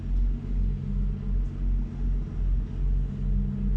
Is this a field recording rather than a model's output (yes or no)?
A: yes